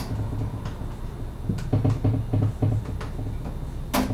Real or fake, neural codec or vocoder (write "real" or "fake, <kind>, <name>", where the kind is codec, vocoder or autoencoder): real